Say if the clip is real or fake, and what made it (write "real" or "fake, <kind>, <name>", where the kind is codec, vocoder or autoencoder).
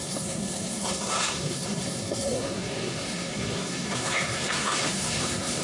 fake, codec, SNAC